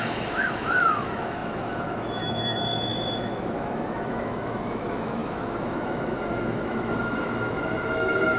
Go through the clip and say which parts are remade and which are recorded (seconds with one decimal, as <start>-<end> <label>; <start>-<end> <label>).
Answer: 0.0-8.4 remade